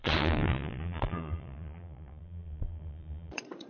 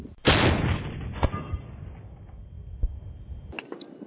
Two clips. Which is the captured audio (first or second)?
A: second